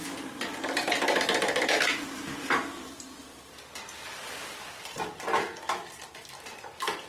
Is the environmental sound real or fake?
fake